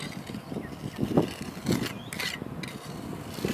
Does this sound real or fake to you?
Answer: real